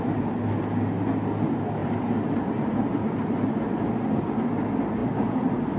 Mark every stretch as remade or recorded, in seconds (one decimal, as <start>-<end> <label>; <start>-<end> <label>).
0.0-1.8 recorded; 1.8-4.2 remade; 4.2-5.8 recorded